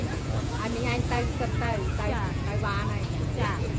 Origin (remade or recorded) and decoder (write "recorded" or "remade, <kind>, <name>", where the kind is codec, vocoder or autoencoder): remade, vocoder, Vocos